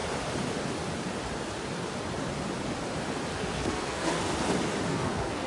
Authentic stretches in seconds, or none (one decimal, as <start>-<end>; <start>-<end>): 0.0-3.3; 4.2-4.9